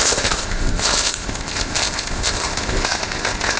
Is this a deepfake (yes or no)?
yes